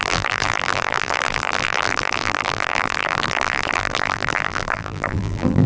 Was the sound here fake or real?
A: fake